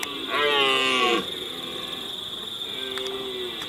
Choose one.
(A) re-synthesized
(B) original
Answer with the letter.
B